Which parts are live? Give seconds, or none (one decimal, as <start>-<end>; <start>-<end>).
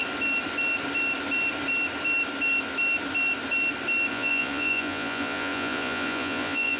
0.0-4.1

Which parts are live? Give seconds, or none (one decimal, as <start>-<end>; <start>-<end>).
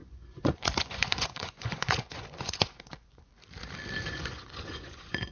3.3-4.1